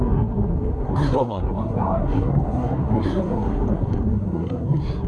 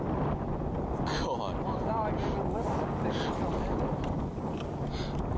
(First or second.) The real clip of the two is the second